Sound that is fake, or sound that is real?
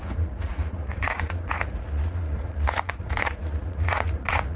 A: fake